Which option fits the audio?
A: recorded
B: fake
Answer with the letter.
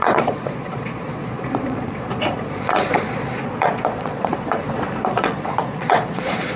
B